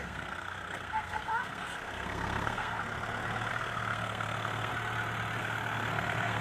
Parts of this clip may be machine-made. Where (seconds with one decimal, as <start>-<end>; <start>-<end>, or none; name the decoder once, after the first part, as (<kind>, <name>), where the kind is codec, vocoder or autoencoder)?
0.0-2.8 (codec, SNAC); 3.5-4.7; 5.4-6.4